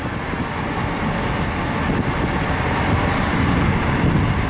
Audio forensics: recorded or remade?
recorded